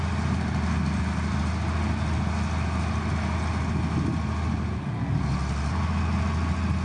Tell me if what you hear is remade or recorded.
recorded